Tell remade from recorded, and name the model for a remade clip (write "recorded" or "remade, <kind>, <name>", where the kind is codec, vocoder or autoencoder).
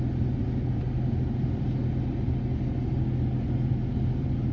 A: recorded